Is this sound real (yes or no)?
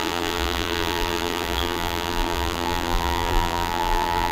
no